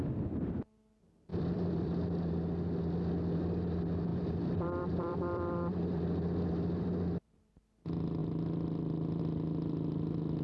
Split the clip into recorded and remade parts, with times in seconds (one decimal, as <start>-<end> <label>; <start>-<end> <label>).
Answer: 0.0-1.3 recorded; 1.3-2.3 remade; 2.3-4.1 recorded; 4.1-7.5 remade; 7.5-10.4 recorded